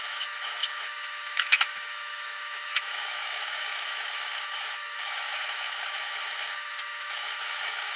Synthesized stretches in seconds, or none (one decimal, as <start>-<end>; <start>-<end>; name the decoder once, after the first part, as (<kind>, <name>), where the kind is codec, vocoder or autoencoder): 0.0-8.0 (autoencoder, DAC-VAE)